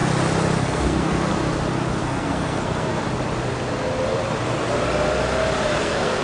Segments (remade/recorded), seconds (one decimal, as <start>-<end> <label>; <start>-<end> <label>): 0.0-0.6 recorded; 0.6-1.3 remade; 1.3-2.0 recorded; 2.0-2.9 remade; 2.9-5.8 recorded; 5.8-6.2 remade